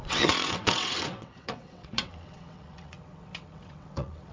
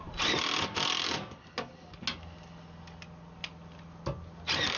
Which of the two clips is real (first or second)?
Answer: second